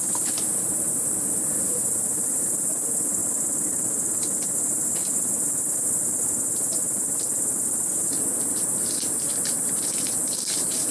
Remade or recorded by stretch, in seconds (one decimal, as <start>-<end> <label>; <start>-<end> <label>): 0.0-10.9 remade